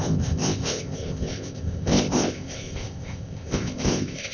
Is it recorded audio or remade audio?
remade